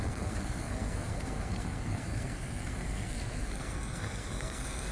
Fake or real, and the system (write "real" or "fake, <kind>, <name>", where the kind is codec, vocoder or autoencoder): fake, codec, SNAC